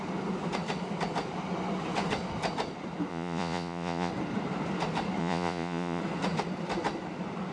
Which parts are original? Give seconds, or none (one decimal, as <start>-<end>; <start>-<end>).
0.0-3.1; 4.1-5.2; 6.0-7.5